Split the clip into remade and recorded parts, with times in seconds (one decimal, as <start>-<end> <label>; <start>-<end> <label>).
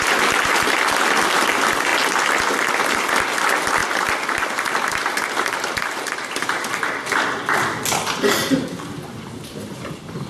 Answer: 0.0-10.3 recorded